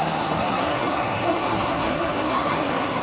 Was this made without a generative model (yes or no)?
no